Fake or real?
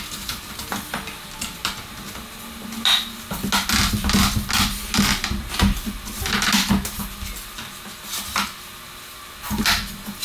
real